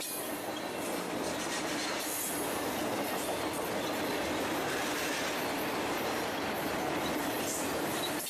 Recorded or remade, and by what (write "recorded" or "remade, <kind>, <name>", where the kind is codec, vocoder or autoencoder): recorded